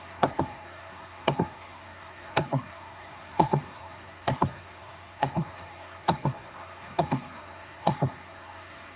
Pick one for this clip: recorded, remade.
remade